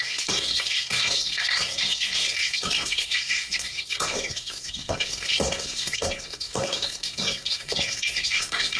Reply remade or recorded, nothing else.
remade